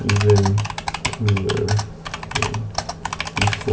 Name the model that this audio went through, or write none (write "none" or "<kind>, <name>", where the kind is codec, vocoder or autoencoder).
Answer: none